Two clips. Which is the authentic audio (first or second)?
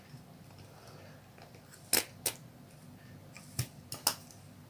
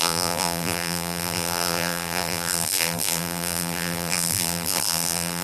first